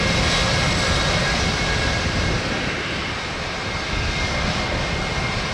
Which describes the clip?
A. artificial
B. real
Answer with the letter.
B